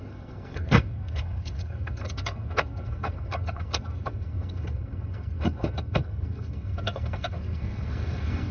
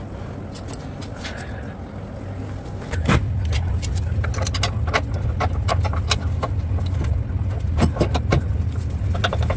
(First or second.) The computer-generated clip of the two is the first